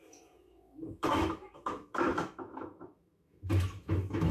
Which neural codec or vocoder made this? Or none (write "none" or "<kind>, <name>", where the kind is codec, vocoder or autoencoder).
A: autoencoder, DAC-VAE